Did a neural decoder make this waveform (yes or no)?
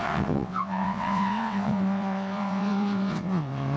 yes